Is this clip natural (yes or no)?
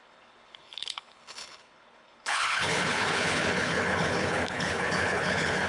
no